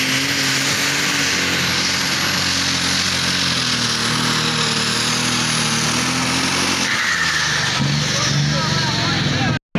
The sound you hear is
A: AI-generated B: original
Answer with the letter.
B